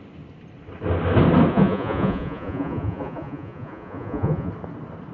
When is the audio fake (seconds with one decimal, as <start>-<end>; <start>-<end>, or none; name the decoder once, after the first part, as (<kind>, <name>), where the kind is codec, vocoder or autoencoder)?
1.5-4.5 (vocoder, Vocos)